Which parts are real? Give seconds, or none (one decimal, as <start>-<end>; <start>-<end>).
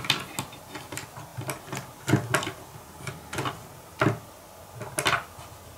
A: 0.0-5.8